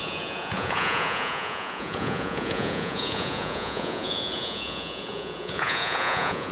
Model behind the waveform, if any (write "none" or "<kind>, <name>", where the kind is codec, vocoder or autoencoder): vocoder, Vocos